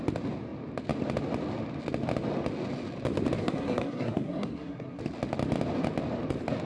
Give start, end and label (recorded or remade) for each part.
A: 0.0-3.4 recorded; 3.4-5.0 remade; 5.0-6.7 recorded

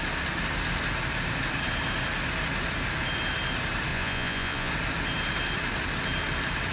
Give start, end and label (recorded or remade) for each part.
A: 0.0-3.9 recorded; 3.9-4.7 remade; 4.7-6.7 recorded

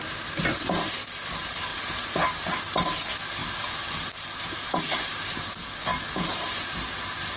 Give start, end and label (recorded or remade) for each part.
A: 0.0-1.7 recorded; 1.7-2.6 remade; 2.6-3.4 recorded; 3.4-5.3 remade; 5.3-5.9 recorded; 5.9-6.9 remade; 6.9-7.4 recorded

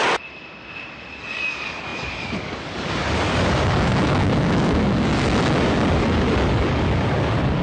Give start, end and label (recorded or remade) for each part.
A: 0.0-1.2 recorded; 1.2-7.6 remade

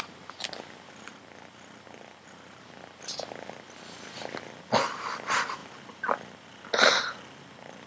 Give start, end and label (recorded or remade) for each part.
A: 0.0-7.9 recorded

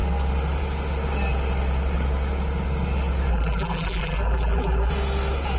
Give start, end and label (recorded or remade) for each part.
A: 0.0-3.3 recorded; 3.3-4.9 remade; 4.9-5.6 recorded

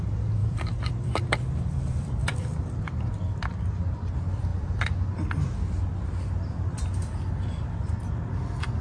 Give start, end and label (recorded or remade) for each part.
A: 0.0-0.4 recorded; 0.4-2.8 remade; 2.8-8.8 recorded

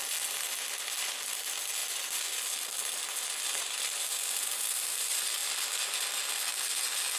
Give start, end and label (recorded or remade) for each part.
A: 0.0-7.2 recorded